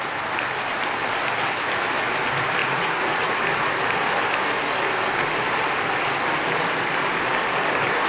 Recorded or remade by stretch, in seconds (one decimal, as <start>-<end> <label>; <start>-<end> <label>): 0.0-2.6 recorded; 2.6-3.4 remade; 3.4-8.1 recorded